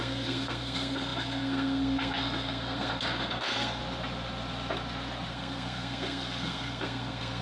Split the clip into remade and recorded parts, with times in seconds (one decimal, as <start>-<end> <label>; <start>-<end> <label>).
0.0-3.8 remade; 3.8-5.3 recorded; 5.3-7.4 remade